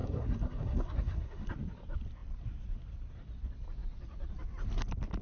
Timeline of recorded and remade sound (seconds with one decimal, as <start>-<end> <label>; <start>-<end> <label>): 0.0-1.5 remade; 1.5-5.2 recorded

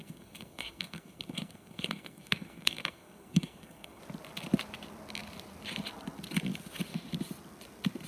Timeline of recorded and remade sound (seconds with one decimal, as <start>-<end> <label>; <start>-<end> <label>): 0.0-4.0 remade; 4.0-8.1 recorded

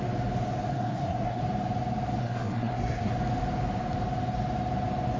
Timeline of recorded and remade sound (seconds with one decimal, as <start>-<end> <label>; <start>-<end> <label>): 0.0-0.7 recorded; 0.7-1.4 remade; 1.4-2.2 recorded; 2.2-3.1 remade; 3.1-5.2 recorded